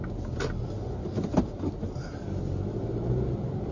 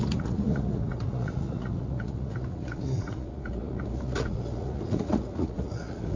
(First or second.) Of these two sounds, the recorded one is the first